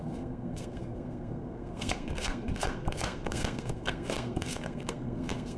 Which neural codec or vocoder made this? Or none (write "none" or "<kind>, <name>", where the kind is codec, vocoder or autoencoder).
codec, SNAC